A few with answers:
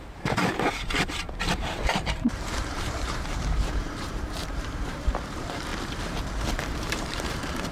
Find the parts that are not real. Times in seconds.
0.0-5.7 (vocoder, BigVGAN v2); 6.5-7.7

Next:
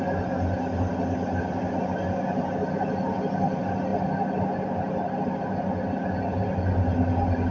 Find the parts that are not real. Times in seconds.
none

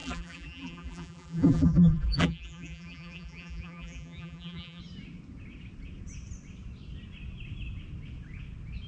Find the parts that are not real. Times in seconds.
0.0-4.8 (vocoder, BigVGAN v2)

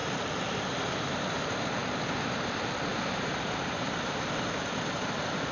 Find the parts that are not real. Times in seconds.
2.9-4.3 (vocoder, BigVGAN v2)

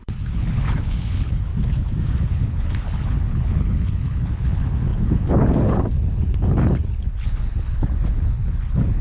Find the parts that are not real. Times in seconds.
0.0-1.5 (codec, HILCodec); 2.2-9.0

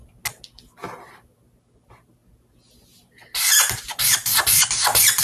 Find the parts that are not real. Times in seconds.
none